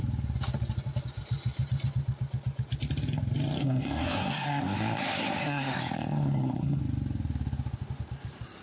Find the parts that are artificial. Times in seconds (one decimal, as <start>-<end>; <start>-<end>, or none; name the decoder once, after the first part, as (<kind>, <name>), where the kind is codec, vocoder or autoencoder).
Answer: 3.6-6.8 (codec, SNAC)